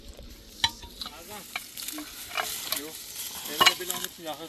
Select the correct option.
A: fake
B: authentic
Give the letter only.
B